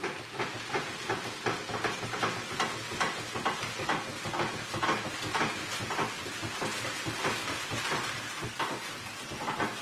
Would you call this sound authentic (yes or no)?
yes